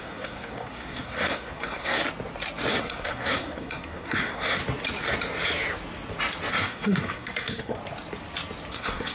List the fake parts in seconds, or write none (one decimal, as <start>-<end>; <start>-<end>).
0.0-2.0; 2.8-4.6; 6.5-7.8; 8.7-9.1